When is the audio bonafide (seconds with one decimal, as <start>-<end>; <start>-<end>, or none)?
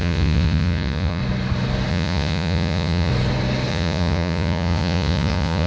1.2-1.9; 3.1-3.7